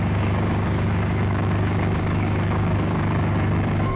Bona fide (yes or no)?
no